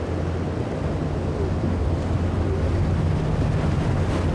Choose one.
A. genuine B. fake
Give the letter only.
A